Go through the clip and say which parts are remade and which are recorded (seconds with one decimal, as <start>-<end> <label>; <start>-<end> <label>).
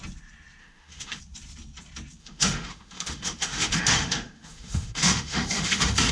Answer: 0.0-0.6 recorded; 0.6-1.2 remade; 1.2-2.2 recorded; 2.2-6.1 remade